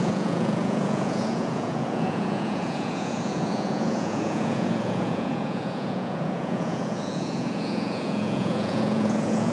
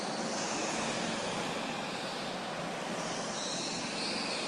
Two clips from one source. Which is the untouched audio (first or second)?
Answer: second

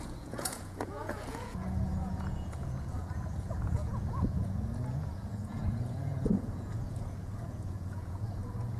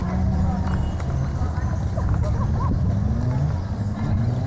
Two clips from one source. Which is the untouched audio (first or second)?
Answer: second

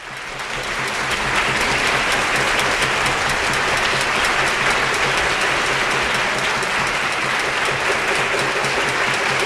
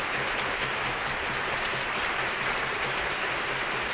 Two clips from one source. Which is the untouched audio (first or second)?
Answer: first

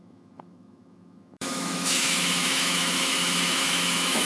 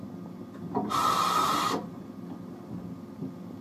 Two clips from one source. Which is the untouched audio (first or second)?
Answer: second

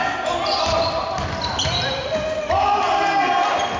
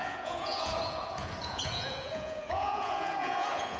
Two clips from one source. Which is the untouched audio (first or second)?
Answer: first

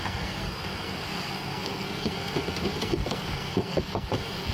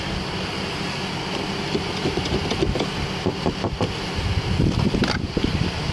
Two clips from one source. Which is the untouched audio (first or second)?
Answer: second